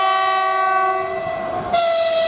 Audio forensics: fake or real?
real